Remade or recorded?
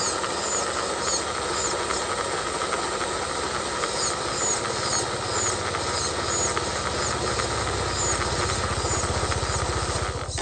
recorded